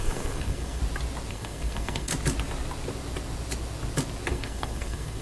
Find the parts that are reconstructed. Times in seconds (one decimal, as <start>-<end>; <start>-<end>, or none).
0.0-0.8; 1.3-2.1; 4.3-5.2